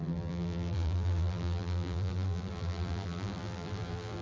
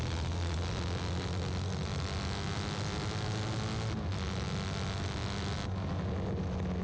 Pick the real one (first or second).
second